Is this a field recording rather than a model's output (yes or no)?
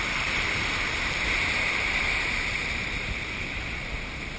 no